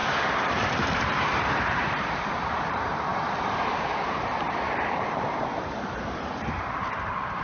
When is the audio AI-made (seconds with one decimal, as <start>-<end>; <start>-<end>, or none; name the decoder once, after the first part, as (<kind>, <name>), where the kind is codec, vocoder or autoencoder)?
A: 0.0-3.1 (vocoder, BigVGAN v2); 3.7-7.4